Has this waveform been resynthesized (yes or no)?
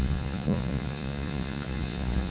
yes